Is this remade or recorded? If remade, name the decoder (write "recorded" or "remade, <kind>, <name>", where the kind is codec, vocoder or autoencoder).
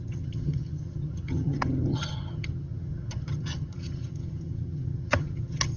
remade, vocoder, HiFi-GAN